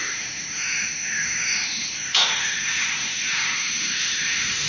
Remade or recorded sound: remade